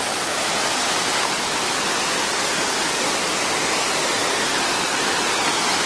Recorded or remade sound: recorded